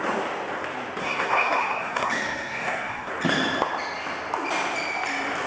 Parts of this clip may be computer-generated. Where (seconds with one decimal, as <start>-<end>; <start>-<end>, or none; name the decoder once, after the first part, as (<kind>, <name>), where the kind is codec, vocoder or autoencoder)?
1.0-3.1 (codec, SNAC)